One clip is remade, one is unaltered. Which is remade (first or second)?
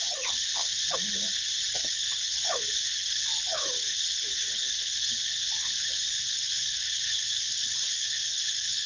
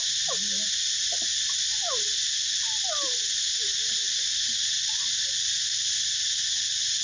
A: first